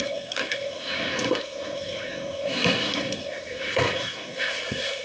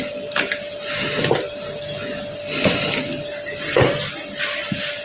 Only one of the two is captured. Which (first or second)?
second